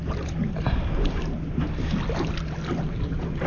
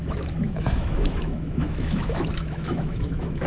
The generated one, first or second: second